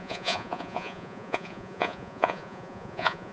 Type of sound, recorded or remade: remade